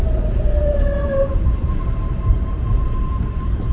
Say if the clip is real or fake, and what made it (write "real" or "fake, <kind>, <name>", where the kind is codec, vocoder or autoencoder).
fake, vocoder, BigVGAN v2